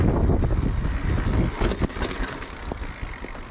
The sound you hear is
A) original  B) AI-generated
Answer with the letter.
A